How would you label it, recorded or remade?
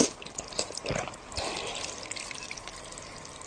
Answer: recorded